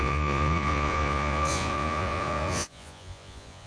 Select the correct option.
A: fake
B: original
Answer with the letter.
A